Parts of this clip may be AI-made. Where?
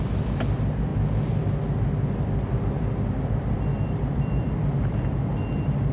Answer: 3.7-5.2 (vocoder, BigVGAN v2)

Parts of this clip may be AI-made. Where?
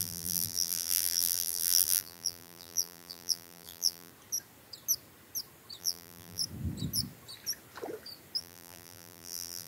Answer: 0.0-4.1 (vocoder, BigVGAN v2); 5.8-6.4; 8.4-9.7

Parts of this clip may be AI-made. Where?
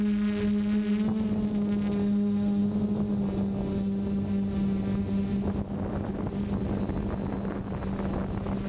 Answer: none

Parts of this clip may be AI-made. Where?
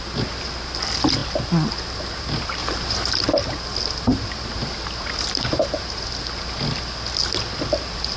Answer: 2.6-3.2 (vocoder, BigVGAN v2); 4.1-6.2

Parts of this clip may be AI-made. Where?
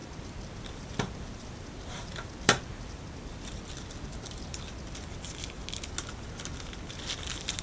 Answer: 0.0-5.6 (vocoder, BigVGAN v2); 6.7-7.6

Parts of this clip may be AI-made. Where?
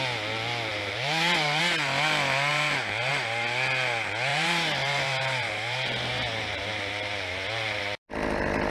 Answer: 0.7-1.6 (vocoder, BigVGAN v2); 2.5-3.1; 4.3-7.8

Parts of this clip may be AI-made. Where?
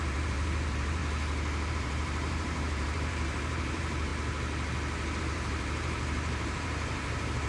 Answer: 0.0-1.0 (vocoder, BigVGAN v2); 1.7-4.1; 5.2-7.5